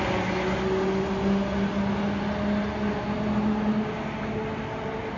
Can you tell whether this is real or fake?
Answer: real